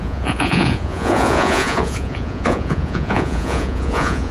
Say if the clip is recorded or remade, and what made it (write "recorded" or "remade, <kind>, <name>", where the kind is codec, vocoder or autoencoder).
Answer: remade, vocoder, Vocos